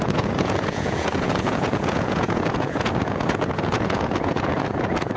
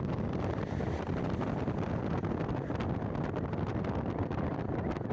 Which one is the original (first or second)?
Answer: second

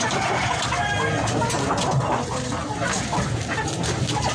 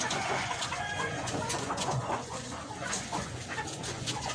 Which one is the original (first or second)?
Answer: first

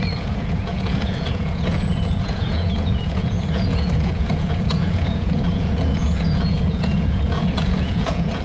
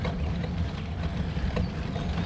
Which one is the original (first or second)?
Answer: second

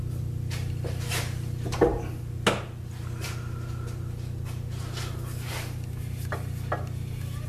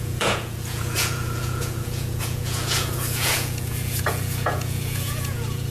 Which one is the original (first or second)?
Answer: first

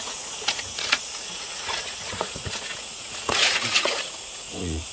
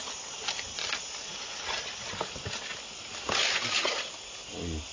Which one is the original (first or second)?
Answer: second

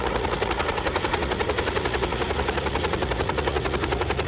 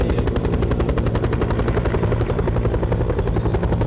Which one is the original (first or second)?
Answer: second